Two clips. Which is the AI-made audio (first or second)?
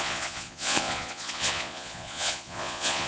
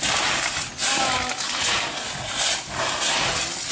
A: first